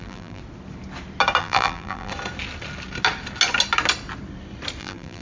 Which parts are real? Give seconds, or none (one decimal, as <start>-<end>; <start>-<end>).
0.4-1.4; 2.1-4.8